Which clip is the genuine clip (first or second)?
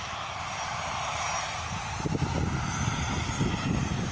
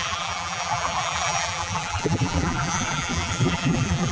first